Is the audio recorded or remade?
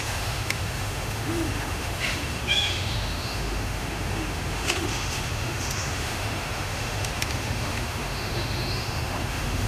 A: remade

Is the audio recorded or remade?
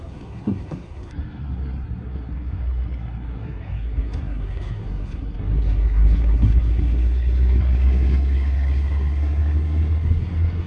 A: remade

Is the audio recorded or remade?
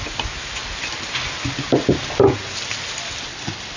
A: recorded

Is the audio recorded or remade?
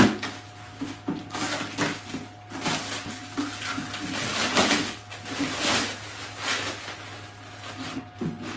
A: recorded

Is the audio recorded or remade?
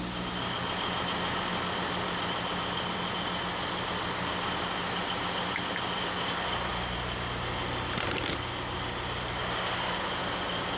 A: recorded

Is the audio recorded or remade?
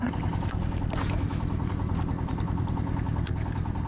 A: recorded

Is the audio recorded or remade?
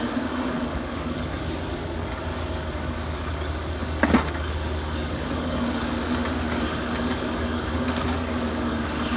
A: remade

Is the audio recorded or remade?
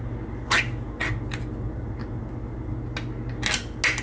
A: recorded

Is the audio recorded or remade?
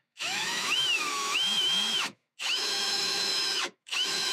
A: remade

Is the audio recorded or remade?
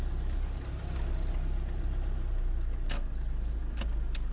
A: recorded